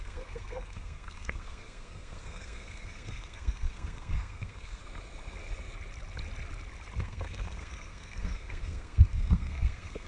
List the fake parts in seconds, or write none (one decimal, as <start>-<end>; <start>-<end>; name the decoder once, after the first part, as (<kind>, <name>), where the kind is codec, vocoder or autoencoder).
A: 0.0-4.8 (codec, SNAC); 7.0-10.1

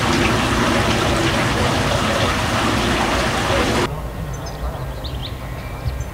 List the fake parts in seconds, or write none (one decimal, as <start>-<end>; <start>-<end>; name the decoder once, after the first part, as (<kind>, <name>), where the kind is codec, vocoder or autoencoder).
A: none

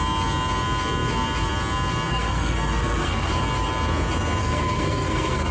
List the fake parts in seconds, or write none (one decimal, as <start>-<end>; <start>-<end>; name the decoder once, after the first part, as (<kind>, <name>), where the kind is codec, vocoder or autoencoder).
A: 2.1-3.3 (codec, SNAC); 4.4-5.5

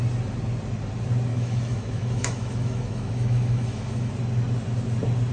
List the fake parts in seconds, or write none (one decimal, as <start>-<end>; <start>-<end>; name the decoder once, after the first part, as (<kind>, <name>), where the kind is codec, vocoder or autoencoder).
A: 1.3-4.1 (autoencoder, DAC-VAE)

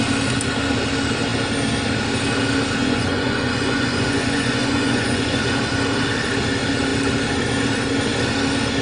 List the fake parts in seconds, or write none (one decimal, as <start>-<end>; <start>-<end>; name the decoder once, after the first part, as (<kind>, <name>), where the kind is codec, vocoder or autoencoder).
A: 2.8-5.4 (vocoder, Vocos)

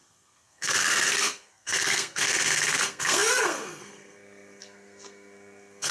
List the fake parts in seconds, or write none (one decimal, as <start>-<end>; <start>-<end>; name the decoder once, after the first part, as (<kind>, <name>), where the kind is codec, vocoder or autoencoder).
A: 0.0-5.9 (codec, SNAC)

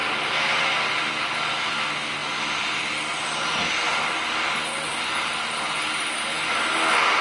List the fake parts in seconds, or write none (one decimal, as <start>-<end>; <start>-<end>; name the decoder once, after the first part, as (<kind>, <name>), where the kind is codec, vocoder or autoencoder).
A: none

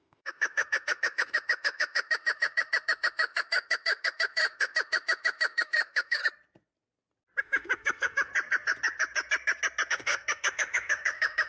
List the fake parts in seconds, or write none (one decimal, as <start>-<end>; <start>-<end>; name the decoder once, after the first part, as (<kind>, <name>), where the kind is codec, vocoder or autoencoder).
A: 0.0-6.2 (autoencoder, DAC-VAE); 7.4-8.3; 9.9-11.5